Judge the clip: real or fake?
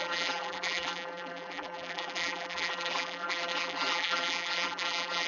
fake